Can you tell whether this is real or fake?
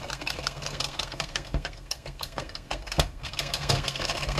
fake